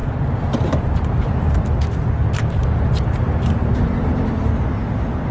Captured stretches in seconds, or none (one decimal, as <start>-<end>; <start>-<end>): 1.6-2.2; 4.5-5.3